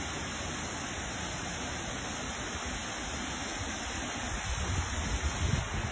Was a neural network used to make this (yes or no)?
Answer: no